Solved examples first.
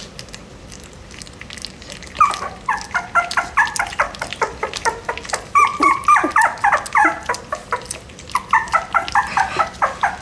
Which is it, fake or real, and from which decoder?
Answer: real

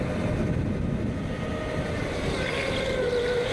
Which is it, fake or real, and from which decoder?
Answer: real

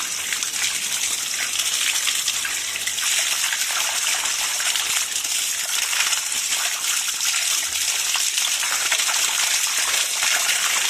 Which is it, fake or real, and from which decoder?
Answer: real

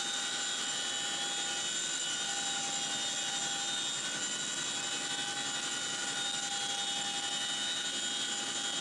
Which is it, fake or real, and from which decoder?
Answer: real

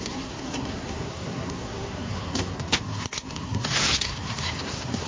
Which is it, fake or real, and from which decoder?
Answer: fake, codec, SNAC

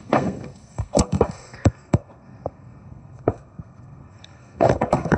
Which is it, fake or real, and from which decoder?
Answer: fake, codec, SNAC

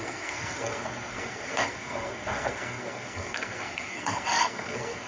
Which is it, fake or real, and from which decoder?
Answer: fake, codec, SNAC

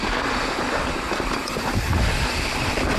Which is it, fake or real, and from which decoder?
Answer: real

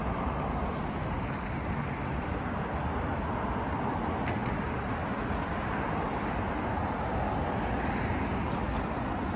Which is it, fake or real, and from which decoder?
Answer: real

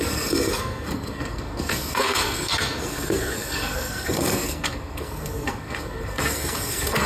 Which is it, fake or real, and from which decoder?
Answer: fake, codec, SNAC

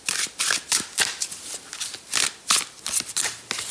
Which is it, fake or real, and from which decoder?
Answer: real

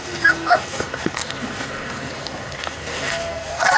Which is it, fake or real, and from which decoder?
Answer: fake, codec, SNAC